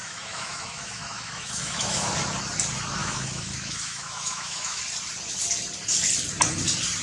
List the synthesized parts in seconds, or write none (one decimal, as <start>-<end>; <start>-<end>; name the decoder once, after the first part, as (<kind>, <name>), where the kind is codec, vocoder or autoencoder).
0.0-2.1 (autoencoder, DAC-VAE); 3.0-4.8